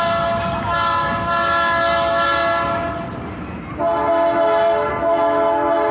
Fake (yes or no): no